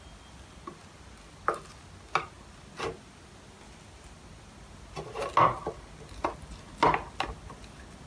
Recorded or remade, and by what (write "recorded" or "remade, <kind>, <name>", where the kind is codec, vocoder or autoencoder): recorded